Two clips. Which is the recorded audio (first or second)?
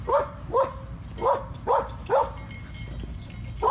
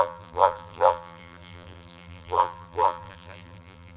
first